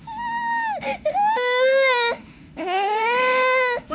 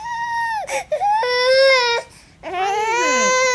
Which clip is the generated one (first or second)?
first